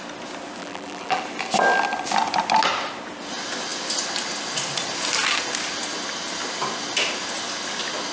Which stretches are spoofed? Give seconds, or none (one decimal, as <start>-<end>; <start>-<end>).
0.6-1.2